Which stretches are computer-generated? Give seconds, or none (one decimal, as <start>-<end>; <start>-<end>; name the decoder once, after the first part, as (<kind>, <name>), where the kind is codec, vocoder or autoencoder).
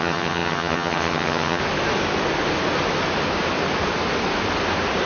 0.0-1.6 (vocoder, HiFi-GAN)